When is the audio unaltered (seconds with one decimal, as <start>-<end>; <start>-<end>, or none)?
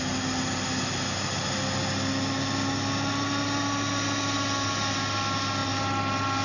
0.0-6.4